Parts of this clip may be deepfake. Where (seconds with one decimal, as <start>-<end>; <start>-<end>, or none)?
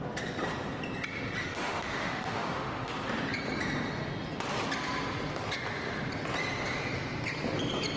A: 1.4-2.9